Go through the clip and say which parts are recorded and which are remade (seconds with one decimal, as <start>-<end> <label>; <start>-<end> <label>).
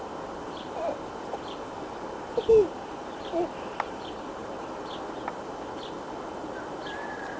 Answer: 0.0-7.4 recorded